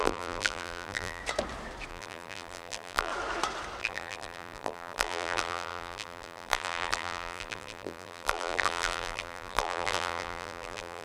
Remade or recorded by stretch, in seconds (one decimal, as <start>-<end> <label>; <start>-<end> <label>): 0.0-1.2 remade; 1.2-1.9 recorded; 1.9-3.1 remade; 3.1-3.8 recorded; 3.8-11.0 remade